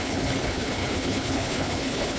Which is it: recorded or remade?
remade